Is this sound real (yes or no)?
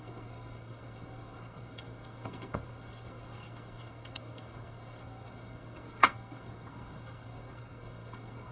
no